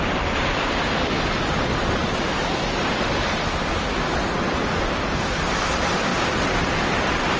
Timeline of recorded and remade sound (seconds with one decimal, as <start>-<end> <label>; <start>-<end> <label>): 0.0-1.7 recorded; 1.7-3.1 remade; 3.1-6.1 recorded; 6.1-6.8 remade; 6.8-7.4 recorded